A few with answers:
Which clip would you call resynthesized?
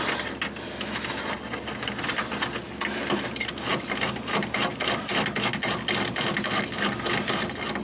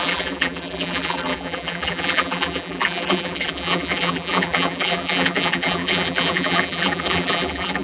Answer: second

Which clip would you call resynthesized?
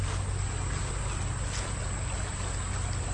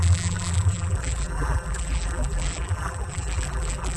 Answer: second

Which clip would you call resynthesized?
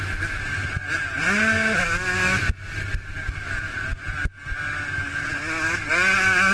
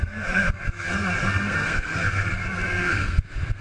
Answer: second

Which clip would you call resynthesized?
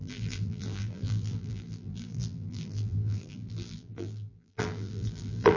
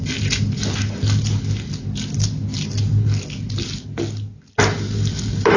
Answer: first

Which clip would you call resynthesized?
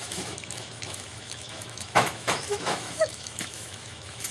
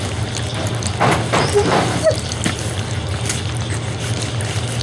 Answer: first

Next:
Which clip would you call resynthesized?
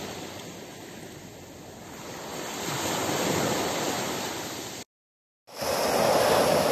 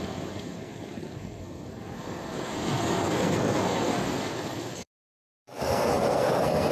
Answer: second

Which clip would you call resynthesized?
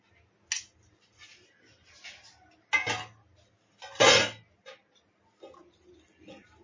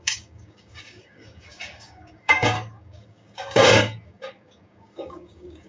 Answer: second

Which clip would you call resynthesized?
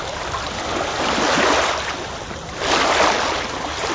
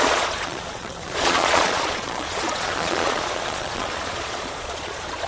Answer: second